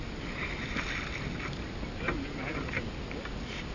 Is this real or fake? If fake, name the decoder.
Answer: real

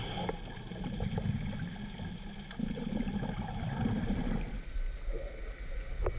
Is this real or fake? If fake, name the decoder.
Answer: real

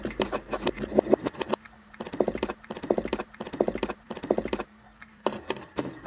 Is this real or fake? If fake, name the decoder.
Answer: fake, vocoder, BigVGAN v2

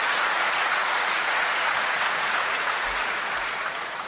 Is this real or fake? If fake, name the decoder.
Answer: fake, vocoder, Vocos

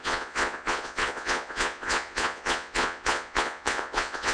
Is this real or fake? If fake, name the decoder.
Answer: fake, vocoder, Vocos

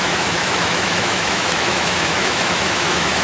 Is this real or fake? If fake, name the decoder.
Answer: fake, autoencoder, DAC-VAE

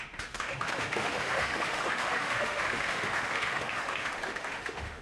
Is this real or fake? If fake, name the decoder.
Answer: fake, autoencoder, DAC-VAE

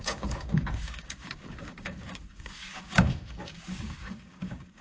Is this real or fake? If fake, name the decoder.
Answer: fake, codec, DAC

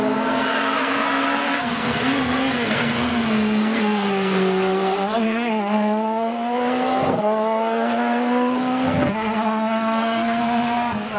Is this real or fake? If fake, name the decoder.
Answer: fake, codec, SNAC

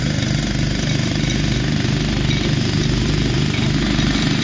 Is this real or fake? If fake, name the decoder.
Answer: real